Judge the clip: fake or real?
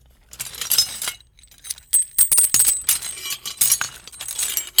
real